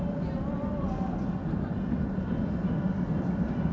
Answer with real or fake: real